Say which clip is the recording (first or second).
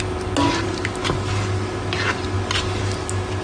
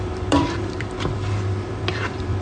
first